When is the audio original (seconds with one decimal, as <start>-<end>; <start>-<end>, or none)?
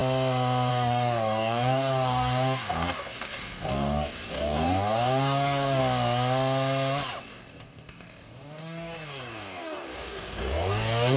0.0-0.7; 5.8-7.2